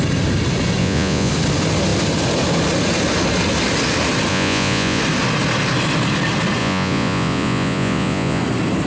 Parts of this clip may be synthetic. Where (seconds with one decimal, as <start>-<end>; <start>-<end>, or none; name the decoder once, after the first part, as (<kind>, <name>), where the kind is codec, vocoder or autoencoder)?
0.8-1.3 (vocoder, Vocos); 4.3-5.0; 6.6-8.4